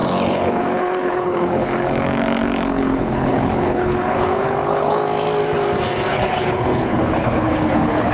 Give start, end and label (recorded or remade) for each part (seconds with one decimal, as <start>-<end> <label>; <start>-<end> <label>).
0.0-5.0 remade; 5.0-6.1 recorded; 6.1-8.1 remade